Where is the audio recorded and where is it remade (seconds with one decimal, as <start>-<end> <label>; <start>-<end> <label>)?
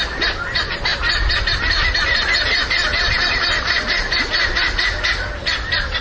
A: 0.0-6.0 recorded